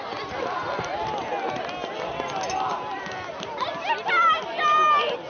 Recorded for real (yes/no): yes